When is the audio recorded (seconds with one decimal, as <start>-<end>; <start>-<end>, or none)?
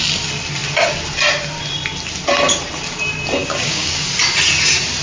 0.0-3.4; 3.9-5.0